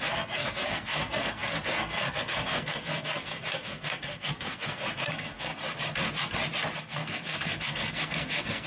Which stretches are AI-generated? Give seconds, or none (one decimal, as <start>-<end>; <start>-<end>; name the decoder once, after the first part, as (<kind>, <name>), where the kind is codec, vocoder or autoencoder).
0.0-5.5 (codec, SNAC); 6.8-8.7